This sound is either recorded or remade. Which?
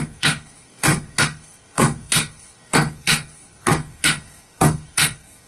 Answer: remade